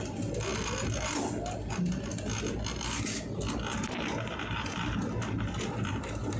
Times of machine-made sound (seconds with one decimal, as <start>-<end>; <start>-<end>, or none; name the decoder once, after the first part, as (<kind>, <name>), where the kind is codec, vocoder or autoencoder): none